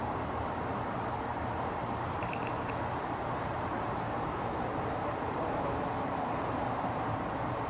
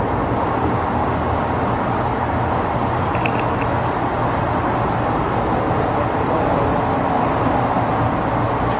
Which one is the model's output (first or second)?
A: first